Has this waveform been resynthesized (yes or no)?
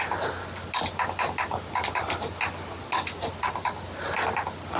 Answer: no